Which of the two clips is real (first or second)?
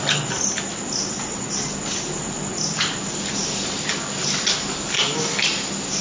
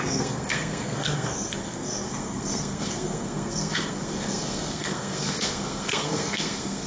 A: first